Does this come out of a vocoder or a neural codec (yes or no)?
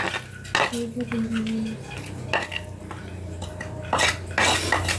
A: no